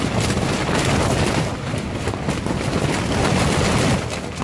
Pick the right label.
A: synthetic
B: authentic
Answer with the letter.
B